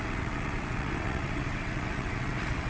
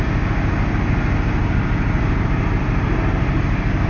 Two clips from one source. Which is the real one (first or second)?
second